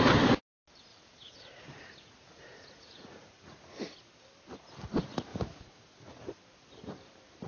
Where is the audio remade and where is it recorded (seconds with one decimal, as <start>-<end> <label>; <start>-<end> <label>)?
0.0-0.9 recorded; 0.9-3.8 remade; 3.8-5.3 recorded; 5.3-6.4 remade; 6.4-7.5 recorded